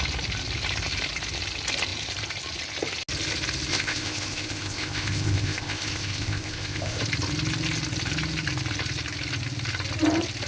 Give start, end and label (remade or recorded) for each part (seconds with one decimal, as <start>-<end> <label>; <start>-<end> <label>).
0.0-3.7 recorded; 3.7-7.0 remade; 7.0-10.5 recorded